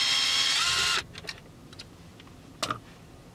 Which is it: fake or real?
real